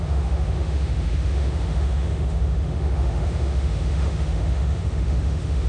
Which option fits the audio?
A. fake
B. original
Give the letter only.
A